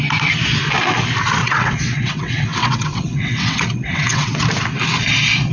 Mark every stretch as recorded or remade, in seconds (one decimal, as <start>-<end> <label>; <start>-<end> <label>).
0.0-1.4 recorded; 1.4-4.4 remade; 4.4-5.5 recorded